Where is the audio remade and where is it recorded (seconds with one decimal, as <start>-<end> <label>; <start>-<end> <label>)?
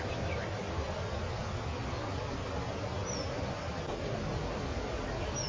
0.0-5.5 recorded